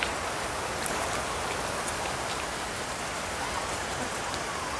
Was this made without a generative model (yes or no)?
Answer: yes